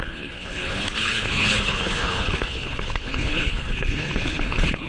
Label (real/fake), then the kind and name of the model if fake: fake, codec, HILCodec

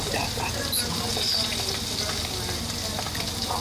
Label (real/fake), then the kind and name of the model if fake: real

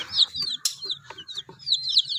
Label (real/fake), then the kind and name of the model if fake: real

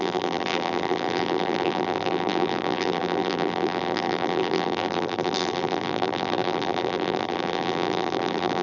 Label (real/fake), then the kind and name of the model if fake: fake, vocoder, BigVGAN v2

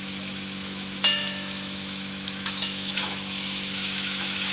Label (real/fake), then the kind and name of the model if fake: fake, autoencoder, DAC-VAE